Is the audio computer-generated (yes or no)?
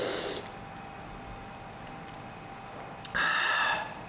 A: no